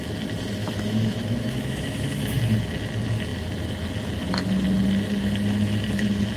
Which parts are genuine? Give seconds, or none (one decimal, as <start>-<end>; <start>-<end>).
0.0-0.6; 2.4-6.4